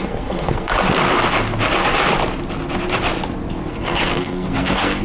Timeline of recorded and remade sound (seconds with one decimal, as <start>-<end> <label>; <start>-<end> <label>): 0.0-0.7 remade; 0.7-3.7 recorded; 3.7-5.0 remade